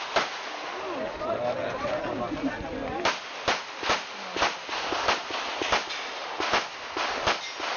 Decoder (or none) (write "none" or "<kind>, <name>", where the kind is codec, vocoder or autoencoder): none